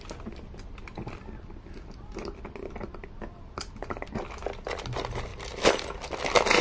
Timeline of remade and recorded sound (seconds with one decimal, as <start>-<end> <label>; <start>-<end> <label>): 0.0-6.6 recorded